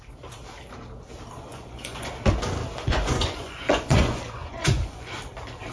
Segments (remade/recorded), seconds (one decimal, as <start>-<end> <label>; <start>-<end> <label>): 0.0-1.5 recorded; 1.5-2.1 remade; 2.1-2.8 recorded; 2.8-5.1 remade; 5.1-5.7 recorded